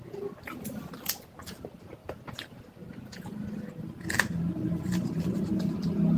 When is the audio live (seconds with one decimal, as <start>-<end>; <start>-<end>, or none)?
0.0-6.2